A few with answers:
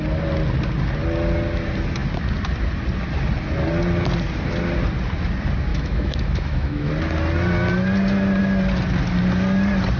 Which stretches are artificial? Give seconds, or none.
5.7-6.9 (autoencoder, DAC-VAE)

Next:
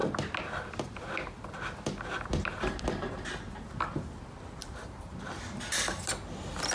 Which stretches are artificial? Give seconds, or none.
4.6-5.7 (vocoder, BigVGAN v2)

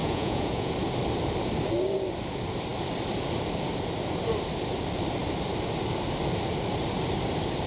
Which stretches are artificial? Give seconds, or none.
0.0-0.7 (vocoder, Vocos)

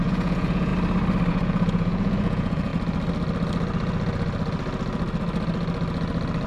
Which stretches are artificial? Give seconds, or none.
0.0-0.7 (vocoder, Vocos); 1.3-2.7

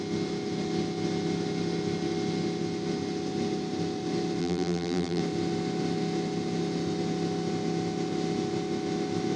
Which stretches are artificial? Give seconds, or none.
4.4-5.2 (vocoder, BigVGAN v2)

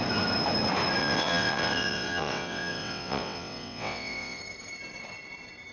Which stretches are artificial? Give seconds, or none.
1.0-4.4 (vocoder, WaveNeXt)

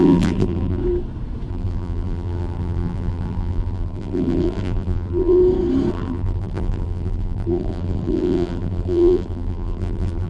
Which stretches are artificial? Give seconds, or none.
0.0-0.8 (vocoder, BigVGAN v2); 1.5-5.4; 5.9-10.3

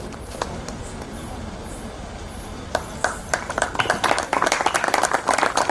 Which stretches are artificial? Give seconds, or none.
3.2-3.7 (vocoder, BigVGAN v2)